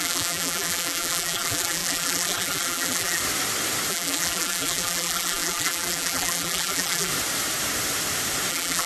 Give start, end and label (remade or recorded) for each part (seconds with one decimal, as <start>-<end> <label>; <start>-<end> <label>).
0.0-3.2 remade; 3.2-3.9 recorded; 3.9-7.1 remade; 7.1-8.5 recorded; 8.5-8.9 remade

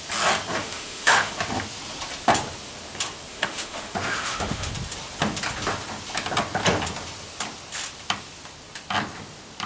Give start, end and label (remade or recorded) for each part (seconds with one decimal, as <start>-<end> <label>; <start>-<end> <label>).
0.0-0.6 recorded; 0.6-1.3 remade; 1.3-3.3 recorded; 3.3-4.7 remade; 4.7-9.7 recorded

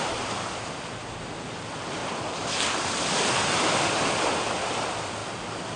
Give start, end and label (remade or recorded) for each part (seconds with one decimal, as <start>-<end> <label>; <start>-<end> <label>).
0.0-5.8 recorded

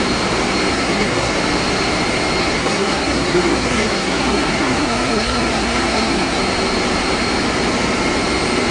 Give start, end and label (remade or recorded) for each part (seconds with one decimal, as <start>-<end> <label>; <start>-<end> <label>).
0.0-0.7 recorded; 0.7-1.3 remade; 1.3-2.4 recorded; 2.4-6.4 remade; 6.4-8.7 recorded

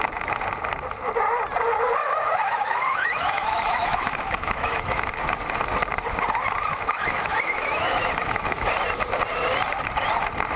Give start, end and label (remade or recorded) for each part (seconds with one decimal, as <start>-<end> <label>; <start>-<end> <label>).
0.0-2.0 recorded; 2.0-5.1 remade; 5.1-6.7 recorded; 6.7-8.7 remade; 8.7-10.6 recorded

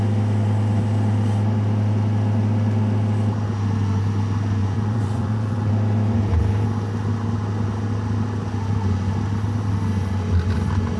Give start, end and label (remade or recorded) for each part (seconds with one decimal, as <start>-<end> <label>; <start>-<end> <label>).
0.0-4.6 recorded; 4.6-5.7 remade; 5.7-11.0 recorded

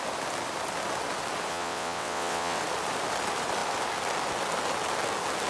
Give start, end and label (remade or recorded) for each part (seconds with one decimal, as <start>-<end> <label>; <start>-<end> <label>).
0.0-1.5 recorded; 1.5-2.6 remade; 2.6-5.5 recorded